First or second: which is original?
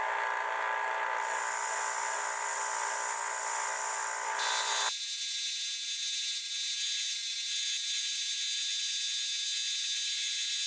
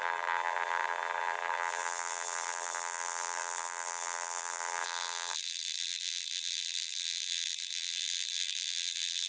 first